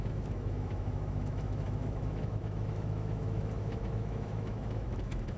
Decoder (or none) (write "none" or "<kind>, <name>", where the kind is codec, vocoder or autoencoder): autoencoder, DAC-VAE